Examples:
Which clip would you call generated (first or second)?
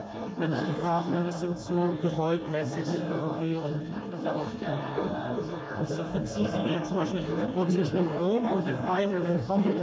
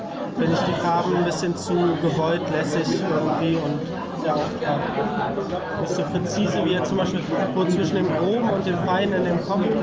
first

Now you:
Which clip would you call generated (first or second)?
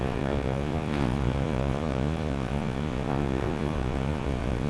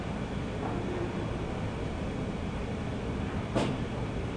first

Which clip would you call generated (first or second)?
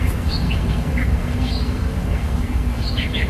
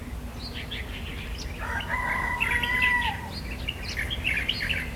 first